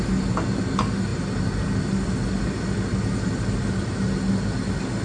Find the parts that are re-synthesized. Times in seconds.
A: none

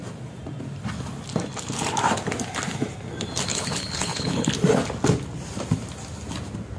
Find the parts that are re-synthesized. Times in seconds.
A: 3.5-4.5 (codec, HILCodec)